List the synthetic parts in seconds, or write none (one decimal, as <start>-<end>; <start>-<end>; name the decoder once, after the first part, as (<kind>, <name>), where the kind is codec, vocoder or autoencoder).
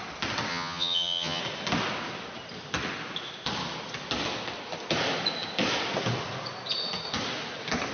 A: 0.5-1.4 (vocoder, HiFi-GAN)